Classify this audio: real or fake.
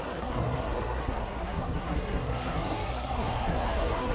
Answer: fake